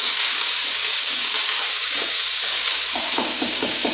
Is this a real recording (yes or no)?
no